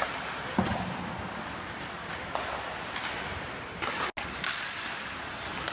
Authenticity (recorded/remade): recorded